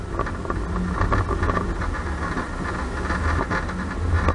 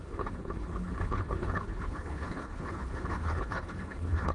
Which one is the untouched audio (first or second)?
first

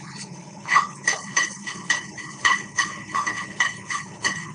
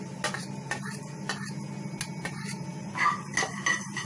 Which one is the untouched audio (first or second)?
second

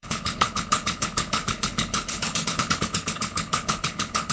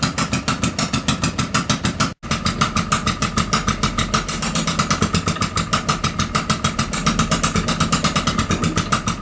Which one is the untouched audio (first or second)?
second